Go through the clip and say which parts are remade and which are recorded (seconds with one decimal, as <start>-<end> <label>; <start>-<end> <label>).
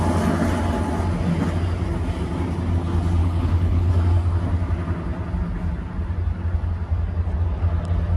0.0-3.2 recorded; 3.2-3.9 remade; 3.9-8.2 recorded